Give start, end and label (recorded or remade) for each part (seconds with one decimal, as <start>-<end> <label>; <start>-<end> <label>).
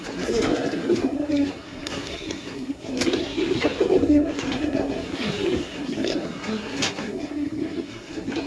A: 0.0-8.5 remade